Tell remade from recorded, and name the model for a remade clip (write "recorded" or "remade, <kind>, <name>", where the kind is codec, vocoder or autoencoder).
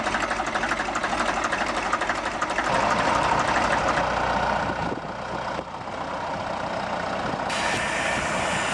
recorded